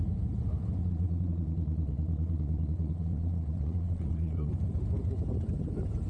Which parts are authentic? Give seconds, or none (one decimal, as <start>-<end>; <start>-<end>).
0.0-0.8; 4.5-6.1